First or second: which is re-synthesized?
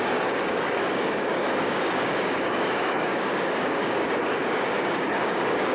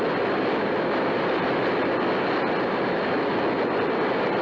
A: first